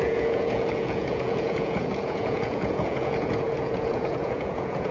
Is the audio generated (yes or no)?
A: yes